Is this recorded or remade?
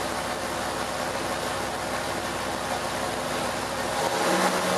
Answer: recorded